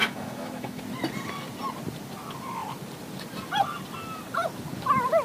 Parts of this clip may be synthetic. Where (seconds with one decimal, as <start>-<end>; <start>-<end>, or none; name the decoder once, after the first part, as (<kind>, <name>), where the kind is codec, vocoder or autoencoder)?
0.0-0.8 (autoencoder, DAC-VAE)